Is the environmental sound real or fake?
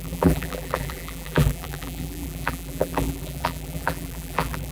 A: fake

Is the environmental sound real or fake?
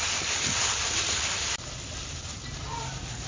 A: real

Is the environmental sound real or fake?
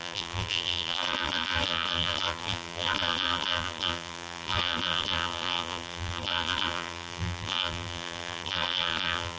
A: fake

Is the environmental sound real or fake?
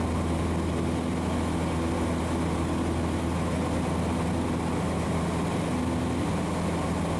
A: real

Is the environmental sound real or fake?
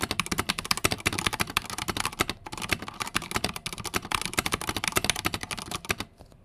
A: real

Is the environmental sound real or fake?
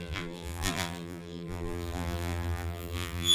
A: fake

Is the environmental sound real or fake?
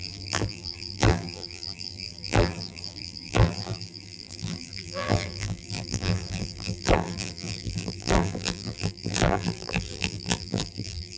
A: fake